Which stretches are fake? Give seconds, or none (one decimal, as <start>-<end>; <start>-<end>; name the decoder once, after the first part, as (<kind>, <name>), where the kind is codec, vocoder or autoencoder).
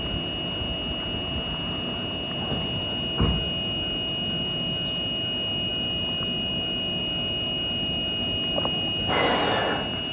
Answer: none